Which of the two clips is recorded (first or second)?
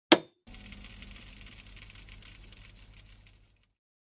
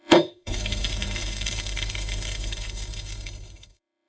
first